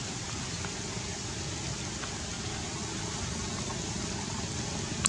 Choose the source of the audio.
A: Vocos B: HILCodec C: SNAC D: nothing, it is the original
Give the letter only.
D